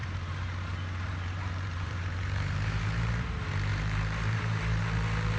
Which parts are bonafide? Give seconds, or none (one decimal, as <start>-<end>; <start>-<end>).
3.2-3.7; 4.8-5.4